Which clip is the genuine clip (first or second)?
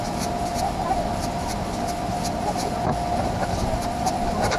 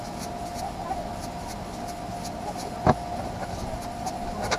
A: second